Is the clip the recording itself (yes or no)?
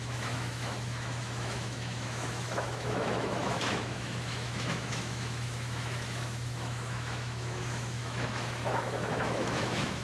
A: no